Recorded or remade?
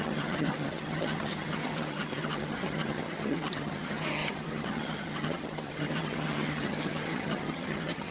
remade